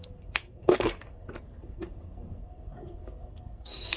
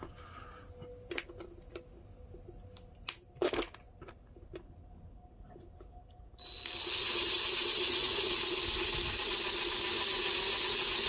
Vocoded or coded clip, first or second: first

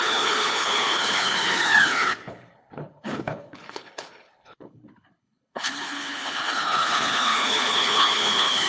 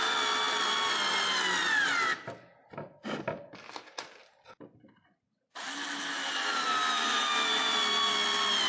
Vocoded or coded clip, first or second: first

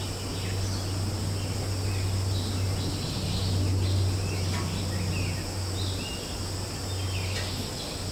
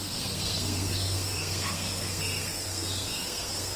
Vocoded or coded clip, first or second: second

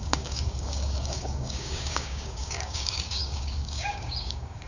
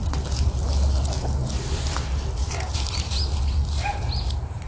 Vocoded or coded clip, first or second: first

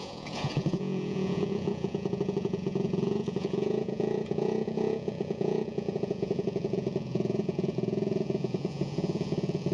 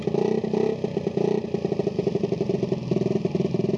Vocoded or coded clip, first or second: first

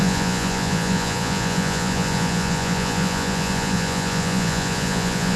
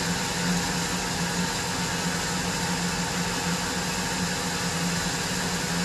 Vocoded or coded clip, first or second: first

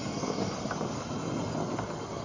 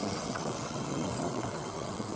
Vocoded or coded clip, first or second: second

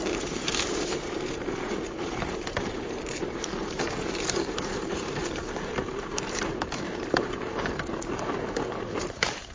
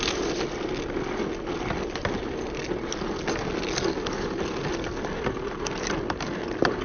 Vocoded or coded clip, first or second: first